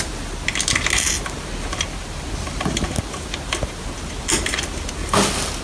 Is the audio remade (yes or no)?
no